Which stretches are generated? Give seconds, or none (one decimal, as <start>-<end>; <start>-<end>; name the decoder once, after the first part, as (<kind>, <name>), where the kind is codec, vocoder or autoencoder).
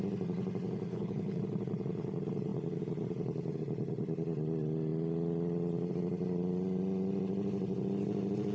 0.9-1.4 (codec, HILCodec)